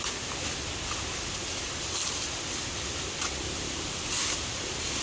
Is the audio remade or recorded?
recorded